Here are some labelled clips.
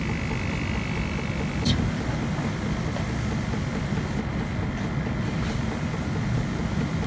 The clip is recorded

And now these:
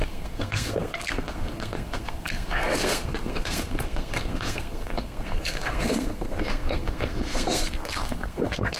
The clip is remade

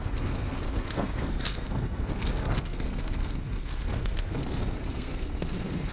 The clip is remade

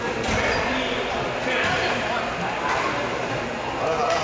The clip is recorded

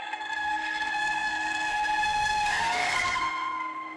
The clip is remade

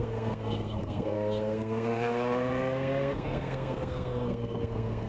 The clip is remade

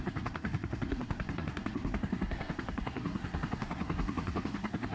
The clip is remade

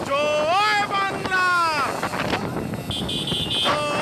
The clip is recorded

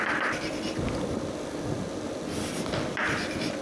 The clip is recorded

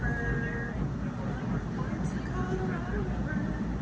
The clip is recorded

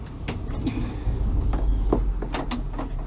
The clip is recorded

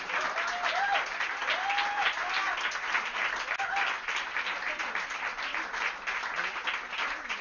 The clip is recorded